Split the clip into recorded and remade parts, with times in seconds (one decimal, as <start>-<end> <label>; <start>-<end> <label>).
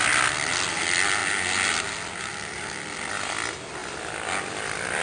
0.0-5.0 recorded